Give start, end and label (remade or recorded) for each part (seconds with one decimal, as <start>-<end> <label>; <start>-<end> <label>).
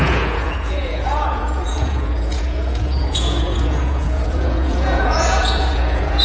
0.0-6.2 remade